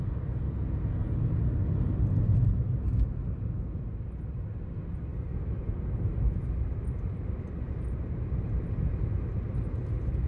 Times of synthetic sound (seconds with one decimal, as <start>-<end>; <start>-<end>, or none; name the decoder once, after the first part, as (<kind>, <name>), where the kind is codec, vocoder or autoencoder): none